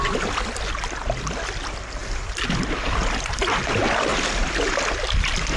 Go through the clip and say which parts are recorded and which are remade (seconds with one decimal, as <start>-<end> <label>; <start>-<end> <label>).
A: 0.0-2.0 recorded; 2.0-2.9 remade; 2.9-5.6 recorded